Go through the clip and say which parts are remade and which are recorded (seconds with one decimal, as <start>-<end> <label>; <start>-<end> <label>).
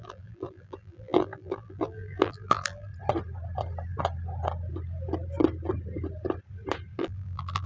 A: 0.0-2.9 remade; 2.9-7.0 recorded; 7.0-7.7 remade